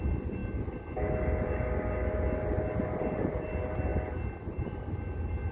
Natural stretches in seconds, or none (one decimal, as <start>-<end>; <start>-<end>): 0.0-5.5